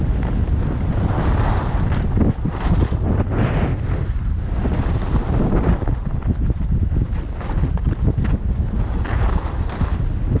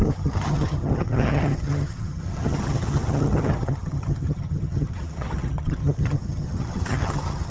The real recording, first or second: first